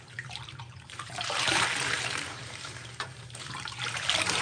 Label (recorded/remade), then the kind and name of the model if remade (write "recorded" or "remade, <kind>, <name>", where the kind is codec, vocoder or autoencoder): remade, vocoder, BigVGAN v2